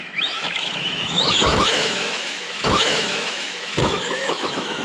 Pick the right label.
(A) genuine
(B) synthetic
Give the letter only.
B